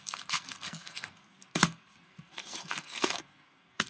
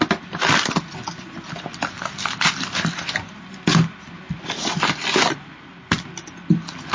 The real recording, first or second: second